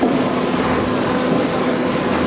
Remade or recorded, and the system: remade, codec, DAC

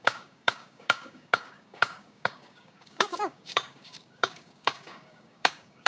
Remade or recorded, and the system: remade, codec, DAC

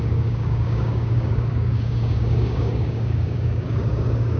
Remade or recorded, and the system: remade, codec, DAC